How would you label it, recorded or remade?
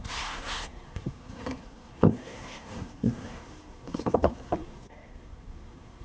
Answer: remade